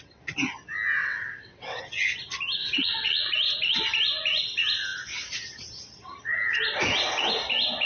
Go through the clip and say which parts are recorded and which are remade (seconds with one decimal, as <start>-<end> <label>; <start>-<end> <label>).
0.0-1.0 recorded; 1.0-1.8 remade; 1.8-2.6 recorded; 2.6-3.3 remade; 3.3-7.9 recorded

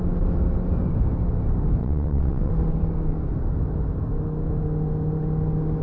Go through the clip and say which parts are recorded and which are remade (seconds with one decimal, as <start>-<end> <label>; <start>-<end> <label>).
0.0-1.8 recorded; 1.8-2.5 remade; 2.5-5.8 recorded